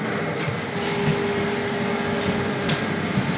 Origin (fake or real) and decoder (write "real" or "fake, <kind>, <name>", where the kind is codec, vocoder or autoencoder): real